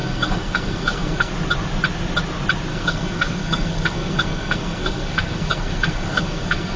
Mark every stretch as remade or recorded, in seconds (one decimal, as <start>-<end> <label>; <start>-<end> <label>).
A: 0.0-1.3 remade; 1.3-2.7 recorded; 2.7-6.8 remade